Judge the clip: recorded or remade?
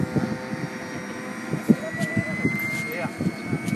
recorded